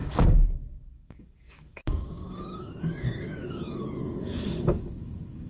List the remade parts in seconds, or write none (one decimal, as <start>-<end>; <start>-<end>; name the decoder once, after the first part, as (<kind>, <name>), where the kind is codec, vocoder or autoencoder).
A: 0.0-5.5 (codec, DAC)